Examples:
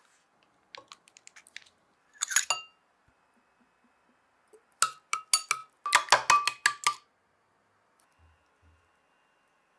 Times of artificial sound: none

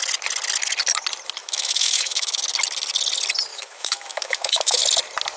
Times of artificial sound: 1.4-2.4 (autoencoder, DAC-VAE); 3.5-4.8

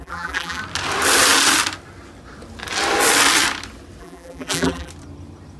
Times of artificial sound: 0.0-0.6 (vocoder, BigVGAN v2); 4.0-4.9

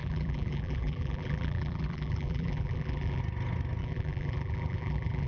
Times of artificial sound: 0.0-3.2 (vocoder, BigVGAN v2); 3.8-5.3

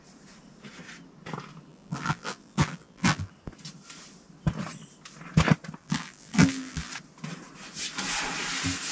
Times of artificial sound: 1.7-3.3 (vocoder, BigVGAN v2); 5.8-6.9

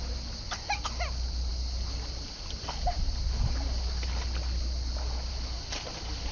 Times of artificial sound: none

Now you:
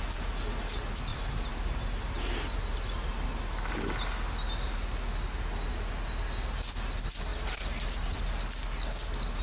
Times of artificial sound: 1.1-1.8 (vocoder, BigVGAN v2)

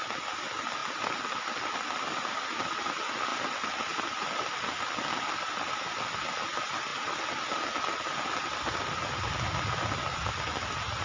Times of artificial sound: none